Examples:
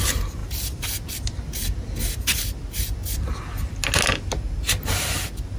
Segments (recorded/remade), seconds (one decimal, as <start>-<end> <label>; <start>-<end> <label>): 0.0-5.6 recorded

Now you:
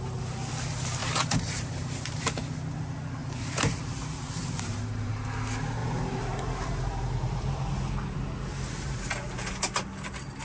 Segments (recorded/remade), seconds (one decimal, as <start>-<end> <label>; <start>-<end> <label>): 0.0-1.0 recorded; 1.0-2.2 remade; 2.2-3.2 recorded; 3.2-5.1 remade; 5.1-5.8 recorded; 5.8-9.1 remade; 9.1-10.4 recorded

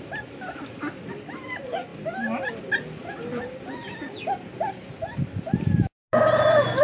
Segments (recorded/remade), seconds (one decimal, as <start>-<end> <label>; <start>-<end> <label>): 0.0-6.8 recorded

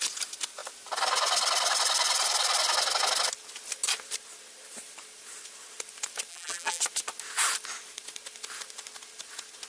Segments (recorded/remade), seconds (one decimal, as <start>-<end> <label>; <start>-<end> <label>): 0.0-6.3 recorded; 6.3-6.8 remade; 6.8-9.7 recorded